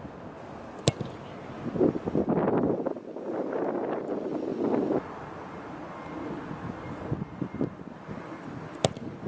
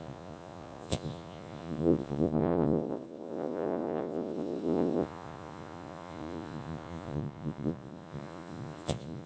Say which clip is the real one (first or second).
first